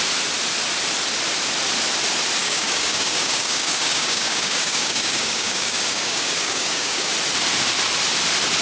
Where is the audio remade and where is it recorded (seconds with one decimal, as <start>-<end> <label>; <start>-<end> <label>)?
0.0-2.4 recorded; 2.4-7.1 remade; 7.1-8.6 recorded